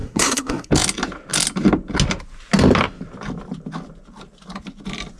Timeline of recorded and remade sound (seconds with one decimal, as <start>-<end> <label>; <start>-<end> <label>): 0.0-0.7 remade; 0.7-5.2 recorded